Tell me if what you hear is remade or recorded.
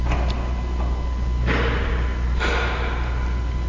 recorded